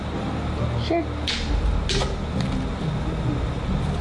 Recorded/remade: recorded